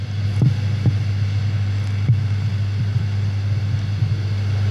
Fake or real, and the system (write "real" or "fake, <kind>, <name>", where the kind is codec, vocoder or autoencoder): real